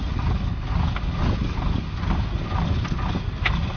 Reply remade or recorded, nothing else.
recorded